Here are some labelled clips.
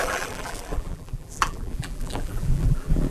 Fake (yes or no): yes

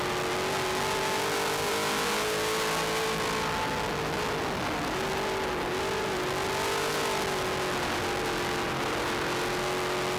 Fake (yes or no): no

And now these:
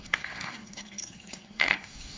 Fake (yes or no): yes